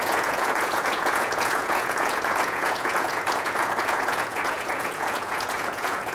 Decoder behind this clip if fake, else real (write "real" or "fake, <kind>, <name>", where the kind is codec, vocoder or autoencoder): fake, vocoder, Vocos